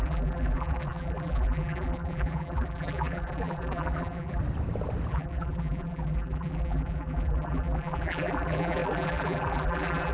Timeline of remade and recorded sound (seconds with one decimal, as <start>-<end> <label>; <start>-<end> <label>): 0.0-4.4 remade; 4.4-5.1 recorded; 5.1-10.1 remade